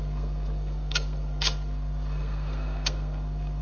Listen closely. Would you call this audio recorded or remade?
remade